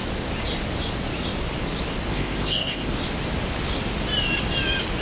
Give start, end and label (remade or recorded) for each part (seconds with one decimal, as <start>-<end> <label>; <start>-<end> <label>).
0.0-2.1 recorded; 2.1-2.9 remade; 2.9-5.0 recorded